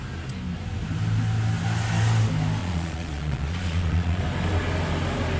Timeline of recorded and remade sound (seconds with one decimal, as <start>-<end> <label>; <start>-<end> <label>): 0.0-2.6 recorded; 2.6-4.2 remade; 4.2-5.4 recorded